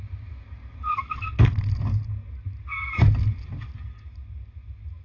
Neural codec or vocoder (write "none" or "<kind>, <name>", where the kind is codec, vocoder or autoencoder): none